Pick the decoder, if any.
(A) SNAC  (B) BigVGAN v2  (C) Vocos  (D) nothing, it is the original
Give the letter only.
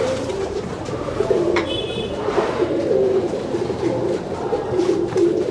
B